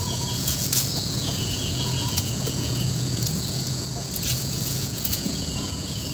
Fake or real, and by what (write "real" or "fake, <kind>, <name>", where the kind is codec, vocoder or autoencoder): fake, vocoder, Vocos